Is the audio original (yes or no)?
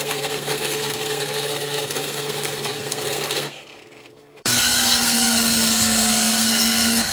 no